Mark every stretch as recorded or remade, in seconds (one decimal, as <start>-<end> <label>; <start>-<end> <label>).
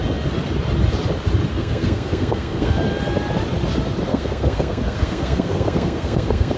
0.0-1.5 recorded; 1.5-2.7 remade; 2.7-4.1 recorded; 4.1-6.6 remade